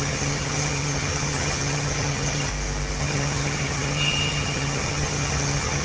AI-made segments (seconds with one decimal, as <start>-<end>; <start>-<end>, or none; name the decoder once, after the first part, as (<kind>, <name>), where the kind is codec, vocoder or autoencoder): 0.0-2.5 (vocoder, HiFi-GAN); 3.0-5.8